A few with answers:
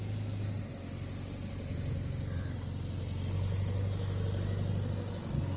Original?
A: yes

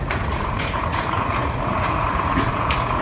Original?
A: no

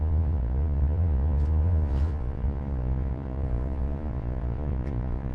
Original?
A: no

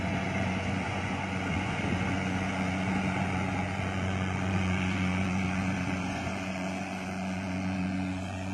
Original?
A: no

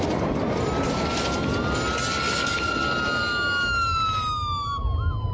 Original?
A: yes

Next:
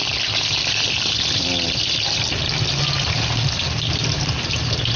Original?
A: yes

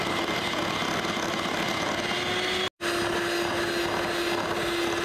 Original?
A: yes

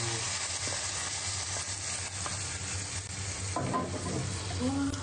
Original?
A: yes